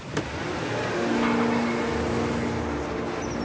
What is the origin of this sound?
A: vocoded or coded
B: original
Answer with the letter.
B